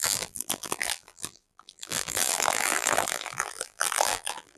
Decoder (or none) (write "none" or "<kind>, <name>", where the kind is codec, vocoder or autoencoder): vocoder, BigVGAN v2